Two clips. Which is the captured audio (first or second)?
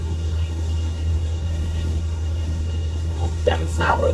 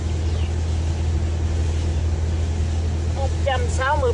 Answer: second